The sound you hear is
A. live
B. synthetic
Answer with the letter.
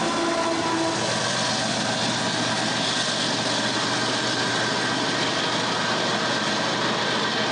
A